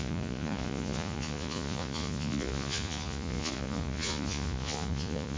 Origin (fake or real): fake